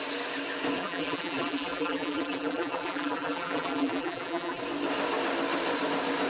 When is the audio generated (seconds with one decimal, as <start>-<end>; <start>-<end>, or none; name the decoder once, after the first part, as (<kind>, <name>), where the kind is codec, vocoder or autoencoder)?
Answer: 0.8-4.6 (vocoder, BigVGAN v2)